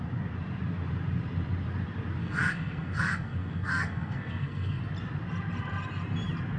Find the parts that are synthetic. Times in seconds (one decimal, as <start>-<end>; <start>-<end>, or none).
2.2-4.8

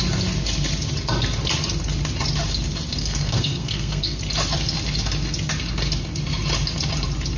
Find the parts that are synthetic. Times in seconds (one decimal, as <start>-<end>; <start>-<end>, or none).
3.0-4.2

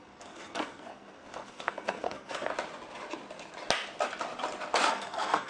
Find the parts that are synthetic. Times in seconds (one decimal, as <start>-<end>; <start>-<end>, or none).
0.0-2.5; 4.9-5.5

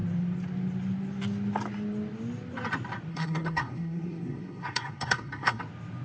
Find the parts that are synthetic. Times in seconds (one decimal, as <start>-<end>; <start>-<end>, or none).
3.1-5.6

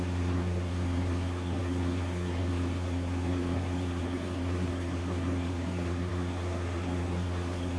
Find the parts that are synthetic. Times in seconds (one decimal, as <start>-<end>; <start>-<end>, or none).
0.0-7.8

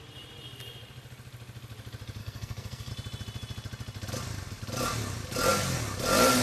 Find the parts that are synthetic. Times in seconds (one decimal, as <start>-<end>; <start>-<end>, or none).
2.2-2.9

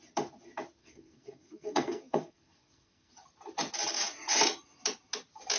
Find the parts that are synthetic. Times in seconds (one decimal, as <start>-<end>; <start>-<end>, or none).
0.8-3.1

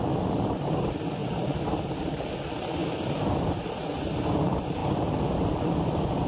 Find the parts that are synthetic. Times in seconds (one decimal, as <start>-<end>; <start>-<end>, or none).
none